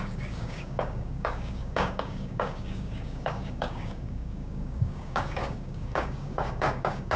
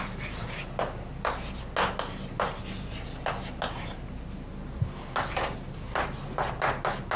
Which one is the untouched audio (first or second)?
second